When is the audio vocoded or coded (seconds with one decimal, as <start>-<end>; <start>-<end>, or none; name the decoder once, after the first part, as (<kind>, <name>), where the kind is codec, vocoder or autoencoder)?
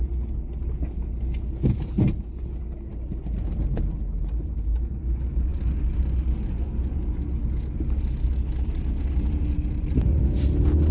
none